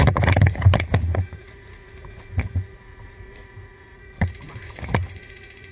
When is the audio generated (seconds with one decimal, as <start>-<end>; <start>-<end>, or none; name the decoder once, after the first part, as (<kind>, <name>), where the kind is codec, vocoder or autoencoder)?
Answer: 0.0-5.7 (vocoder, Vocos)